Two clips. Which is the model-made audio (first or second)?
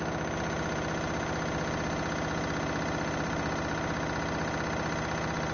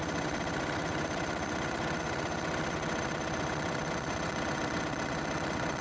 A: second